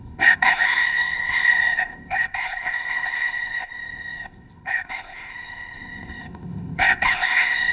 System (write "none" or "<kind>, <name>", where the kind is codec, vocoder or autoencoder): codec, ZipCodec